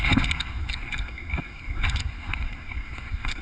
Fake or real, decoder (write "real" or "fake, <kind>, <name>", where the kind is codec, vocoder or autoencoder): fake, codec, SNAC